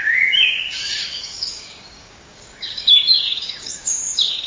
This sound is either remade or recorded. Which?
remade